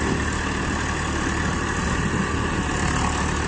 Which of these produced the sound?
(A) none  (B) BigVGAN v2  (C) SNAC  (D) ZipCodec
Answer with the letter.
A